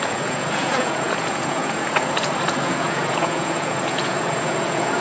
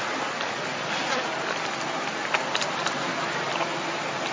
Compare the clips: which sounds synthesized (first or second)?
first